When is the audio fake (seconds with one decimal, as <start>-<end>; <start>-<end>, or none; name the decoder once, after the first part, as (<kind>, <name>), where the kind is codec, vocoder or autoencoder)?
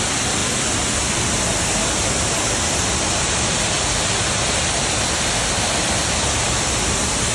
none